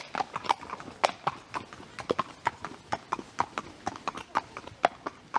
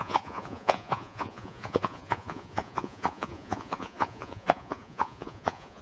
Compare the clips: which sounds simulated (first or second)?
second